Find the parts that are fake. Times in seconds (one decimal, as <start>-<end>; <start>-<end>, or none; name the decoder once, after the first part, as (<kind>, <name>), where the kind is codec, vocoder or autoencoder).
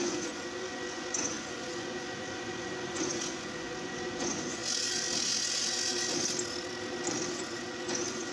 0.0-4.6 (vocoder, Vocos); 7.3-8.3